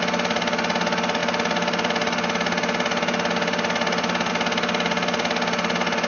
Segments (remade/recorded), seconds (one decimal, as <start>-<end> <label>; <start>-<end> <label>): 0.0-6.1 recorded